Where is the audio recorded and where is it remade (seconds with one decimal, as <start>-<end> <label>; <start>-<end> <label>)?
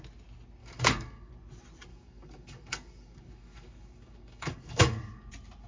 0.0-0.6 recorded; 0.6-1.3 remade; 1.3-1.9 recorded; 1.9-5.3 remade; 5.3-5.7 recorded